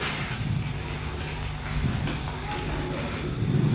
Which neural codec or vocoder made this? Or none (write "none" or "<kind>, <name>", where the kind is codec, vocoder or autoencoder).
none